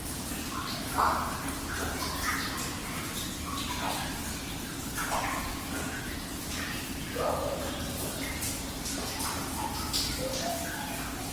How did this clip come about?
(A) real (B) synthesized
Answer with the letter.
A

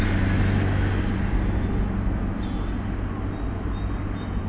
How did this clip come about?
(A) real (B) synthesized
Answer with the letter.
A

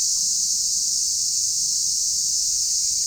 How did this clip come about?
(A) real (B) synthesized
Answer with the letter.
A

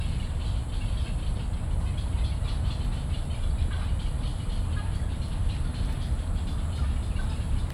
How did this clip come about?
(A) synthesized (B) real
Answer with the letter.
B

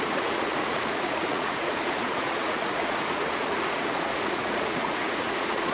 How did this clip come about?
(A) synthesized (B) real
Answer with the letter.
A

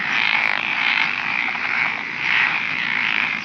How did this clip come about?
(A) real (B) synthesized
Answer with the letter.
B